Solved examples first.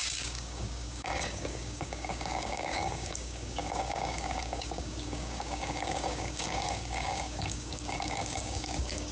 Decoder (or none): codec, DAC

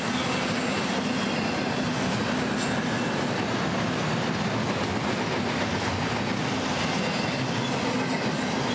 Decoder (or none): none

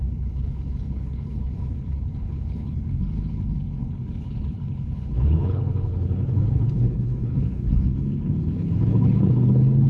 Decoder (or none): codec, HILCodec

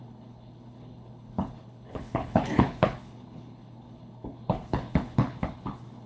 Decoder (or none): codec, HILCodec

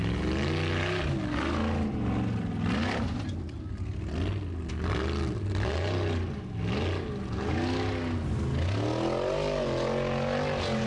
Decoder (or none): none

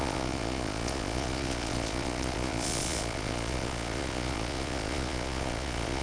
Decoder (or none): vocoder, Vocos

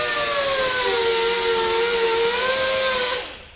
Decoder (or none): none